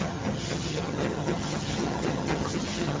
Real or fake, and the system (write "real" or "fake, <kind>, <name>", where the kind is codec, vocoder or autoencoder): fake, vocoder, HiFi-GAN